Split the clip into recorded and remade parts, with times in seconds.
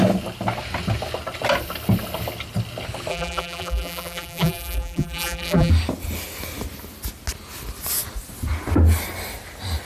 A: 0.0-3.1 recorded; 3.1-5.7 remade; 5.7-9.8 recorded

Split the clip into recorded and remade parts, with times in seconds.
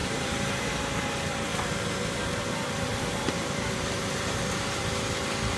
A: 0.0-0.8 remade; 0.8-2.9 recorded; 2.9-4.8 remade; 4.8-5.6 recorded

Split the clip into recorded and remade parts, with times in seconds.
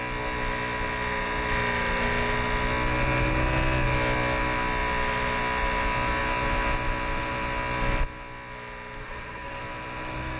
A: 0.0-9.0 recorded; 9.0-9.6 remade; 9.6-10.4 recorded